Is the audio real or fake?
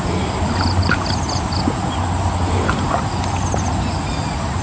real